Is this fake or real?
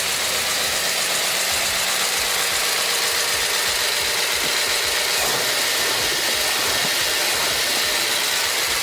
real